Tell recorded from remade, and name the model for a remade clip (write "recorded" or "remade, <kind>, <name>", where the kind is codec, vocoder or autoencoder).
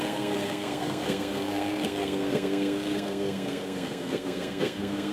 remade, codec, SNAC